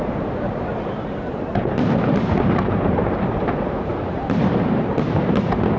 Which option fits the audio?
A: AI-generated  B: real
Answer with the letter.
A